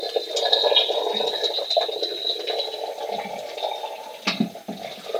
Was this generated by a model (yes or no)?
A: no